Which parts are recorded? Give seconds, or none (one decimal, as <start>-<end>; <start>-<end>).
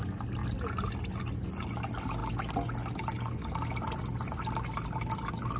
0.0-0.4; 0.9-5.6